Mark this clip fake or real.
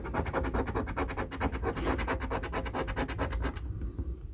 real